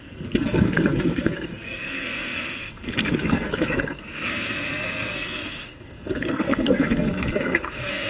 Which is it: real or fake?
fake